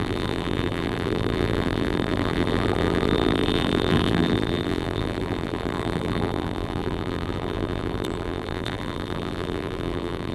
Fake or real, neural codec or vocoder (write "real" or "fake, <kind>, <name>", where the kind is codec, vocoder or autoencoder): fake, vocoder, BigVGAN v2